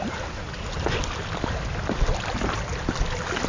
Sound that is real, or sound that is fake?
real